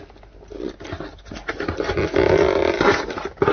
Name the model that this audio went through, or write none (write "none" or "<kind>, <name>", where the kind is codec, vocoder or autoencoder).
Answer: none